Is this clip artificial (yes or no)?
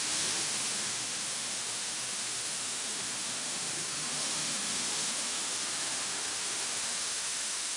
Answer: yes